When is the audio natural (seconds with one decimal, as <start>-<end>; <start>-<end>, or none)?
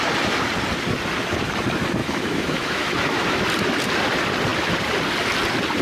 0.0-2.0; 3.5-5.8